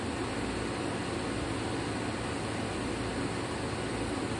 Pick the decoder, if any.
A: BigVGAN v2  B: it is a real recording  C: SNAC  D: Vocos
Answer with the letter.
B